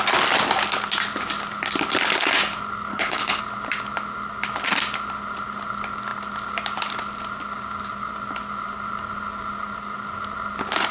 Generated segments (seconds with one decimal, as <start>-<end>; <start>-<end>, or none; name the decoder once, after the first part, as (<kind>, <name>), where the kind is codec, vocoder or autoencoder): 2.9-3.4 (codec, HILCodec)